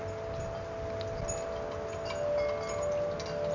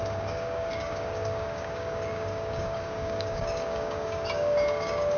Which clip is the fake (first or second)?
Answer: second